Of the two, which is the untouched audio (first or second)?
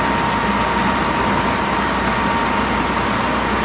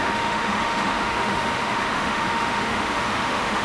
first